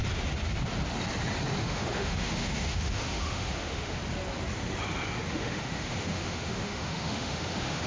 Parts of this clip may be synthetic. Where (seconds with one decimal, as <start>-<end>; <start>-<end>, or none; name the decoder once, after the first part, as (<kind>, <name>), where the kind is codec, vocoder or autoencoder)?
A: 1.6-4.0 (autoencoder, DAC-VAE); 5.3-7.9